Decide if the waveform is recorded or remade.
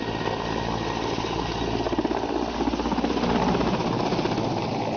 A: recorded